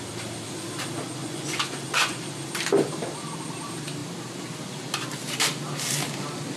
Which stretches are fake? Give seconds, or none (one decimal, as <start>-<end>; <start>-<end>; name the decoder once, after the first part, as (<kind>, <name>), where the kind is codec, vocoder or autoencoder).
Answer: 1.2-2.2 (vocoder, Vocos)